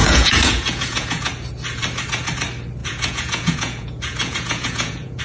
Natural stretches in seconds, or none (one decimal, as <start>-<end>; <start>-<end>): 1.3-2.8